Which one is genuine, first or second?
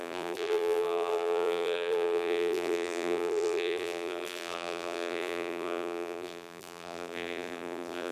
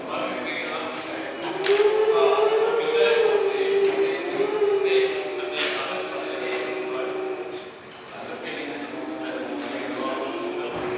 second